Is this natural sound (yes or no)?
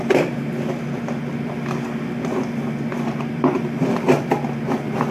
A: yes